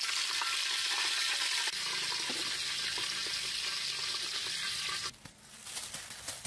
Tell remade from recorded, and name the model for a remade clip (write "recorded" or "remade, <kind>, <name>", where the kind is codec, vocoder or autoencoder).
recorded